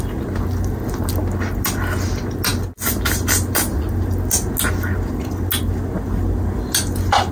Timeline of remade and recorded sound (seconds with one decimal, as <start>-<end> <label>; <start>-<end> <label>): 0.0-7.3 recorded